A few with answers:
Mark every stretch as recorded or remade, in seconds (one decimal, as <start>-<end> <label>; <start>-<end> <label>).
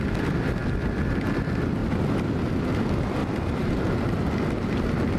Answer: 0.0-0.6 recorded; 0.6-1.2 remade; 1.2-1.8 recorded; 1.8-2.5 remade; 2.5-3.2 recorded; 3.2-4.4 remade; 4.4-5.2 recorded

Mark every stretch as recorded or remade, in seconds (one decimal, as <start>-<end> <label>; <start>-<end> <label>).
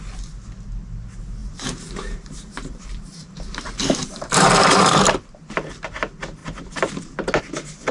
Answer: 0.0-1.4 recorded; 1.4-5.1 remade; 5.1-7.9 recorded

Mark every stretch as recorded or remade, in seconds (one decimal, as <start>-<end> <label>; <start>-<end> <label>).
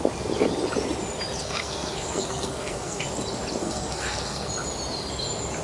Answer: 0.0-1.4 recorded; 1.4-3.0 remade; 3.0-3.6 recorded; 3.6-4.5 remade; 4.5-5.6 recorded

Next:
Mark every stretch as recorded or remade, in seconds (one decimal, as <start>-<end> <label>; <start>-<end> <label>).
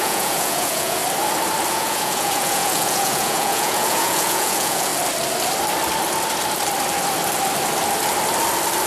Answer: 0.0-1.0 remade; 1.0-1.7 recorded; 1.7-4.9 remade; 4.9-8.9 recorded